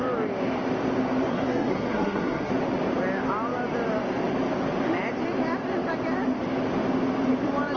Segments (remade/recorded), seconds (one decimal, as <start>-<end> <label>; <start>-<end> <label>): 0.0-1.3 recorded; 1.3-2.5 remade; 2.5-7.8 recorded